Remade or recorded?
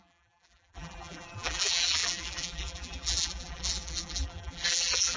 remade